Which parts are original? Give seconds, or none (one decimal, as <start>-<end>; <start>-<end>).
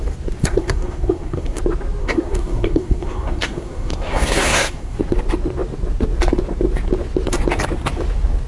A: 0.0-0.4; 1.6-2.0; 5.0-8.5